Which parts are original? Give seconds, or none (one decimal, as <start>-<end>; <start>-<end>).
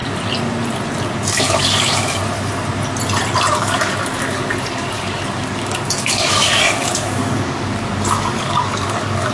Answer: 0.0-1.4; 2.2-3.5